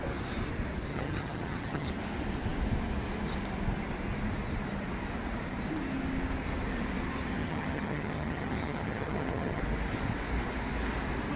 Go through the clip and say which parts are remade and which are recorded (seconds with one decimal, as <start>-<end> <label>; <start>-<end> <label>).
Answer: 0.0-0.9 recorded; 0.9-1.9 remade; 1.9-7.4 recorded; 7.4-9.6 remade; 9.6-11.4 recorded